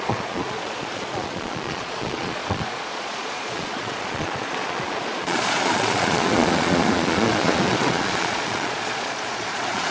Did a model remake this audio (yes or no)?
yes